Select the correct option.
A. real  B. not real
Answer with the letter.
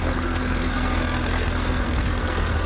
B